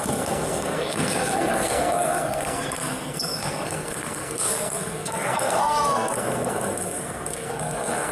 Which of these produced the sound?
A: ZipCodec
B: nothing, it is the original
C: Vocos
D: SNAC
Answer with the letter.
D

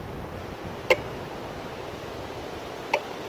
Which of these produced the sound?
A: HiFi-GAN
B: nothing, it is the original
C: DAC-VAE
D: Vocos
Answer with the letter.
B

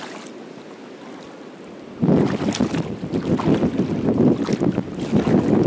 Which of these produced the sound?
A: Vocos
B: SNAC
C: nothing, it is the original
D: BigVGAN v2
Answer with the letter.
C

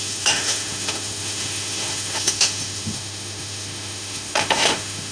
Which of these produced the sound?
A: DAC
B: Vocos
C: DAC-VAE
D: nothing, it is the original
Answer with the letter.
C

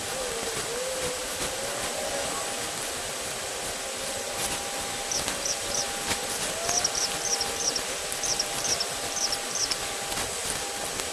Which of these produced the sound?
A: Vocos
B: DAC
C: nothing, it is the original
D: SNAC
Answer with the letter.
C